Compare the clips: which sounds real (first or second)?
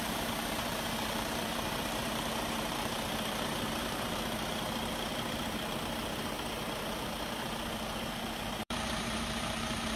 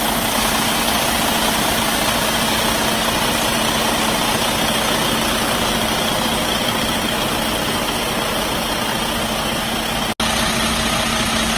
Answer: second